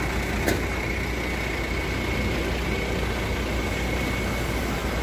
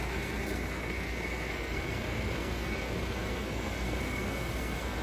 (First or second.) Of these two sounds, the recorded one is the first